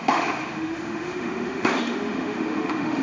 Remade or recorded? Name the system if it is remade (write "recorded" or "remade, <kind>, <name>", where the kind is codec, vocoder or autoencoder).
remade, autoencoder, DAC-VAE